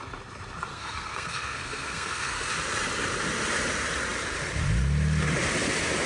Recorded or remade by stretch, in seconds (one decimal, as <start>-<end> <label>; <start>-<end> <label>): 0.0-0.7 recorded; 0.7-2.5 remade; 2.5-6.1 recorded